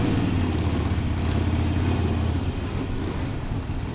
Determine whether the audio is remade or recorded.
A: recorded